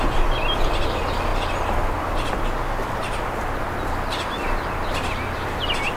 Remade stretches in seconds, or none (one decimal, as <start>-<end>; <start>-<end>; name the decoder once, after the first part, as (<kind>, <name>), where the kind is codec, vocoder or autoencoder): none